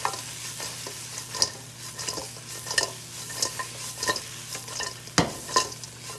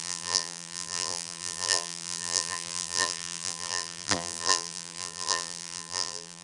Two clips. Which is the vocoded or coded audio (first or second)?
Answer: second